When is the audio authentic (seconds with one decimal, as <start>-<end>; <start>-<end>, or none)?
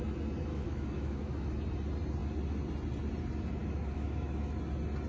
0.0-0.5; 1.5-3.6; 4.6-5.1